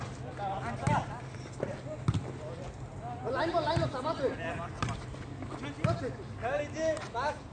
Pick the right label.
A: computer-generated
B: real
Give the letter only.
B